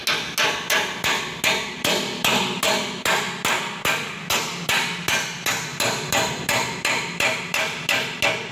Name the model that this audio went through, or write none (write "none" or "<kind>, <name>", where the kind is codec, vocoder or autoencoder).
none